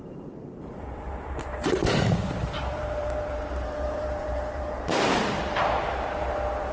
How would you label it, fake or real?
fake